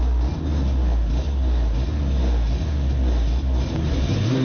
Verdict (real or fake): real